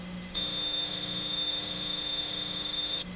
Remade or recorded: remade